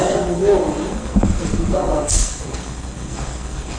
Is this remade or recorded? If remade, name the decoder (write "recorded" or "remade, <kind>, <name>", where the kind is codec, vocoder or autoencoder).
remade, codec, SNAC